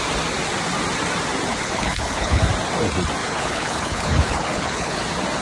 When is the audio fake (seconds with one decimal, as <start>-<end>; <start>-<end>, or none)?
1.5-2.4; 3.2-5.0